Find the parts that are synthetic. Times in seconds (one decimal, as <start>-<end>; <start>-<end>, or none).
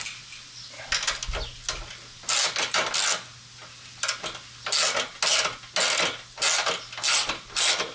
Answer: none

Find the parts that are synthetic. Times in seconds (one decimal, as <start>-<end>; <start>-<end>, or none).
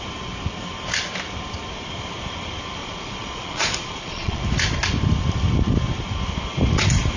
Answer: 2.8-4.4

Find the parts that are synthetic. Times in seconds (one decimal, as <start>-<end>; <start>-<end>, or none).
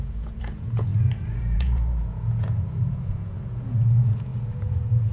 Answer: 0.0-5.1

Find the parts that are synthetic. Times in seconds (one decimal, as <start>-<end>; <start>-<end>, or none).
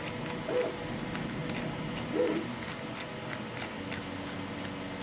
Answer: none